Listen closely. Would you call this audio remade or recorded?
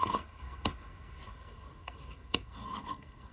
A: remade